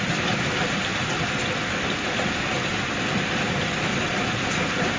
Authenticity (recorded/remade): recorded